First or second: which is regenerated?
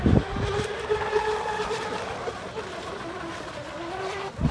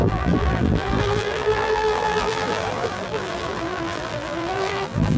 second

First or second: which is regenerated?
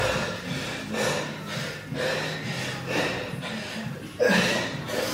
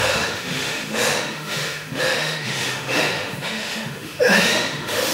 second